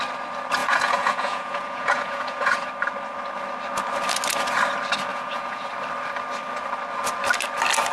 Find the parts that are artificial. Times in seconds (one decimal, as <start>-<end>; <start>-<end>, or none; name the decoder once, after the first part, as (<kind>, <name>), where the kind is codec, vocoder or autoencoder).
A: 0.6-2.7 (vocoder, Vocos); 5.1-5.7

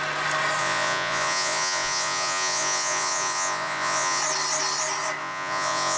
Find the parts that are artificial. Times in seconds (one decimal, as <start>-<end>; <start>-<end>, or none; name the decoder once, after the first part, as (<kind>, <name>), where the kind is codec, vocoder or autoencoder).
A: 0.6-4.2 (vocoder, Vocos); 5.2-6.0

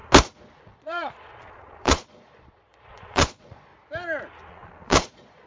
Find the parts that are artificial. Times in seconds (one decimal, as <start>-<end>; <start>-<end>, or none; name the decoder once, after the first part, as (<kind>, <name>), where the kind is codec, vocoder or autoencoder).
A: 0.6-3.7 (vocoder, Vocos); 4.5-5.5